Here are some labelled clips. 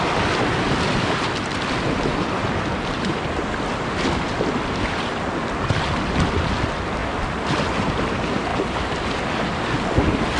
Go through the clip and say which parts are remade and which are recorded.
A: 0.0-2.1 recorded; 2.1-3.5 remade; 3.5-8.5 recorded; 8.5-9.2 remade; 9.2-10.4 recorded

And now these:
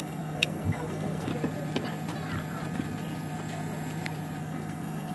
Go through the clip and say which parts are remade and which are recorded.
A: 0.0-1.3 remade; 1.3-4.4 recorded; 4.4-5.1 remade